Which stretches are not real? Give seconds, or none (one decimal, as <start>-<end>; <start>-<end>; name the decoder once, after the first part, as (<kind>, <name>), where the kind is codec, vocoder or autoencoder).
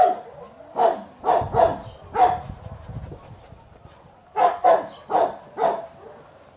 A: none